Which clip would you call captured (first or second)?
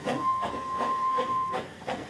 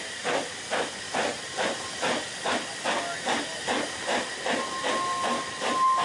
second